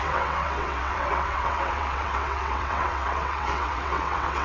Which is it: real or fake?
fake